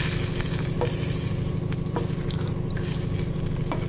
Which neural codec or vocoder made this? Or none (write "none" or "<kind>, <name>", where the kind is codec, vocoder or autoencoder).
none